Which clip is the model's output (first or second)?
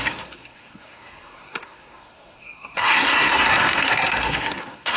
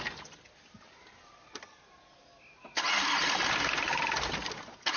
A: first